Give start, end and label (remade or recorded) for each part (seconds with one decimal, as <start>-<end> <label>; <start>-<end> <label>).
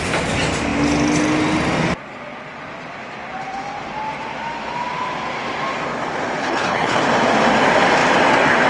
0.0-6.4 recorded; 6.4-7.0 remade; 7.0-8.7 recorded